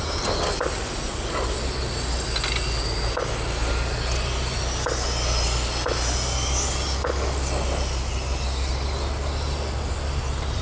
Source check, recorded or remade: recorded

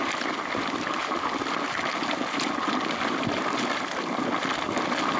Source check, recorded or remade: recorded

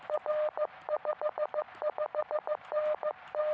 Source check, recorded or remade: recorded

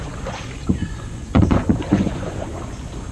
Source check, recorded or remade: remade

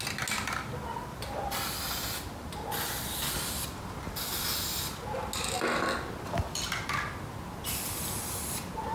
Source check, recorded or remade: recorded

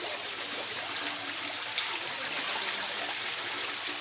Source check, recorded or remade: recorded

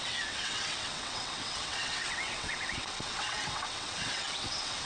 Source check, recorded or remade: remade